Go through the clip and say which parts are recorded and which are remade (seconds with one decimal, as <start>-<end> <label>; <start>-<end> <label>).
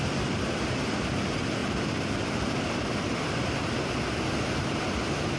0.0-5.4 recorded